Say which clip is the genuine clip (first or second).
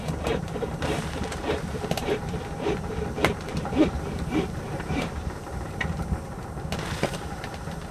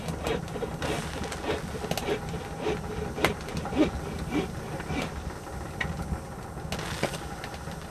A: second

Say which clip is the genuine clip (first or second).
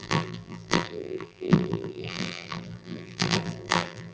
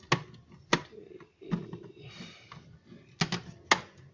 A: second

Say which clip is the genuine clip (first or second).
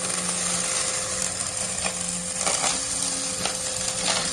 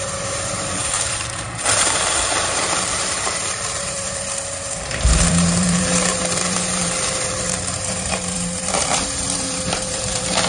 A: first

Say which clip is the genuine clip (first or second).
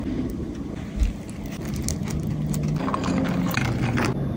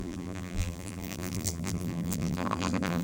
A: first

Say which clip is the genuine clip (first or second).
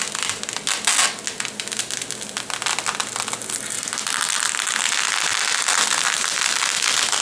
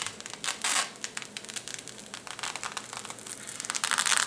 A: first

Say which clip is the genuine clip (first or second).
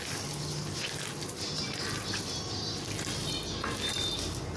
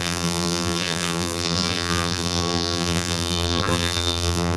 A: first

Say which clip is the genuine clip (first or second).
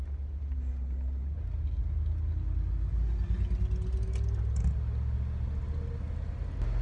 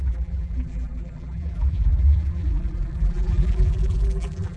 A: first